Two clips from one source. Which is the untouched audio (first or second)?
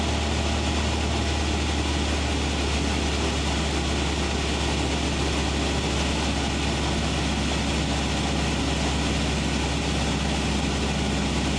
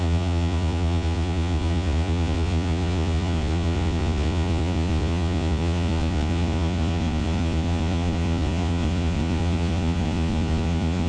first